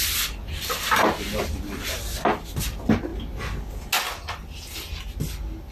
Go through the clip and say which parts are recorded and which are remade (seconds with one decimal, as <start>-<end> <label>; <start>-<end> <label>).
0.0-5.7 recorded